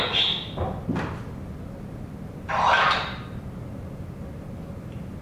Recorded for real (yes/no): yes